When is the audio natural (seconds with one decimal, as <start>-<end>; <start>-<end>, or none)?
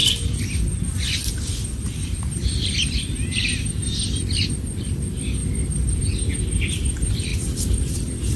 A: 0.0-1.3